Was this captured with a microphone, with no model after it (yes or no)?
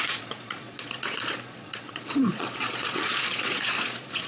no